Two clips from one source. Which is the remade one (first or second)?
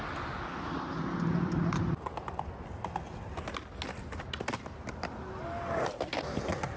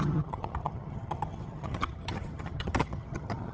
second